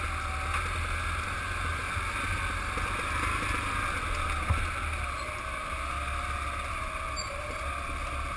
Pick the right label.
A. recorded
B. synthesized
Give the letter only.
A